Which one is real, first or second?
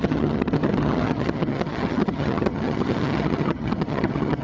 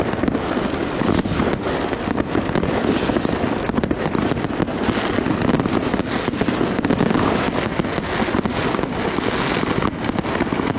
second